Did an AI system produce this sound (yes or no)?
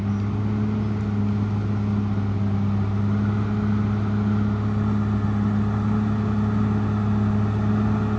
no